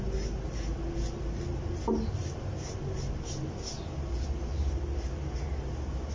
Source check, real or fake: real